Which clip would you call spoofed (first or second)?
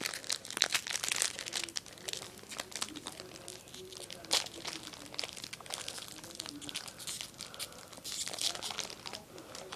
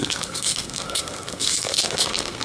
second